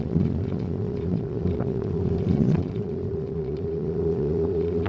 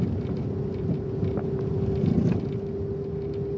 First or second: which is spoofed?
first